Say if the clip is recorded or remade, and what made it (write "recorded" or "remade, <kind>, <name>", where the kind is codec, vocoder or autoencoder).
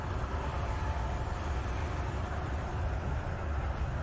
recorded